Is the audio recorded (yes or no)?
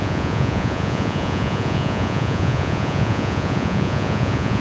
no